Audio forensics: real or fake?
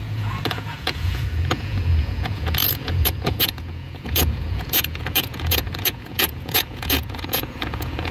fake